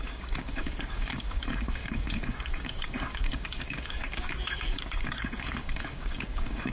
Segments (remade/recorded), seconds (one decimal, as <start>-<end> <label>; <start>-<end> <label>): 0.0-6.7 remade